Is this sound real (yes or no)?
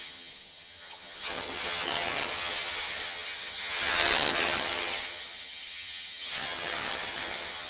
no